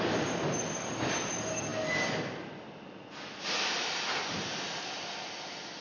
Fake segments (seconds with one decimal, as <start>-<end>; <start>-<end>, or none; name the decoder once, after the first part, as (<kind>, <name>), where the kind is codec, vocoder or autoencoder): none